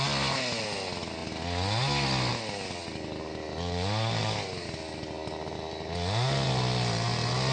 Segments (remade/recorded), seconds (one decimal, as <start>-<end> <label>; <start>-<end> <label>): 0.0-7.5 recorded